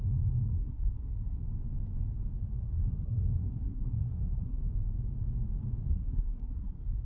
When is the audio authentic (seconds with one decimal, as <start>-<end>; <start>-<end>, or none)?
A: 0.0-0.5; 1.4-2.6; 4.6-5.9